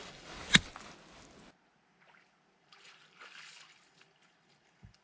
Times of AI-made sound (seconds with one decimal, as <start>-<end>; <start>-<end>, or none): 0.0-0.4; 2.6-5.0